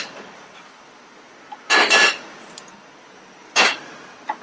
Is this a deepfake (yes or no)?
no